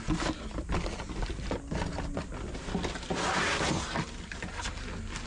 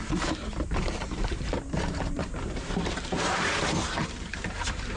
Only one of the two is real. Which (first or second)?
first